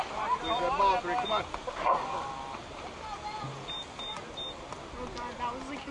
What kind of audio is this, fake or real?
real